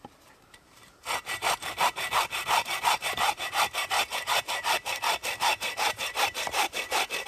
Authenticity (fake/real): fake